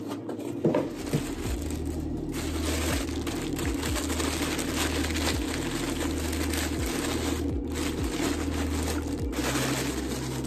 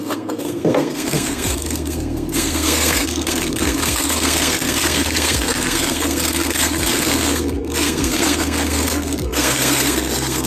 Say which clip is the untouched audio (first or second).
first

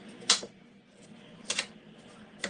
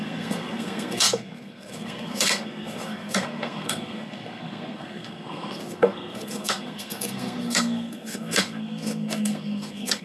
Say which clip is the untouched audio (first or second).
first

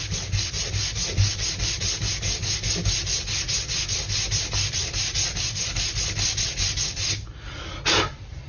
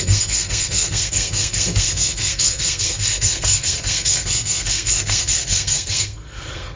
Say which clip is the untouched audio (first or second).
first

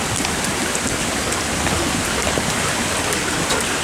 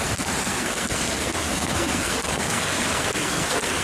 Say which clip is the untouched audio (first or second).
first